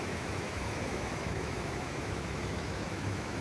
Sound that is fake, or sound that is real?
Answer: fake